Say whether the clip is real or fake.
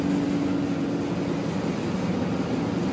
real